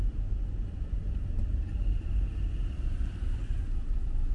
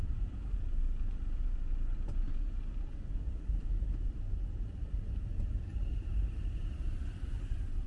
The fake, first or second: second